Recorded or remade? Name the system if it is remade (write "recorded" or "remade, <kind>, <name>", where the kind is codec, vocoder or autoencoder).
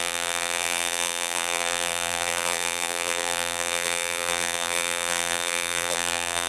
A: remade, vocoder, BigVGAN v2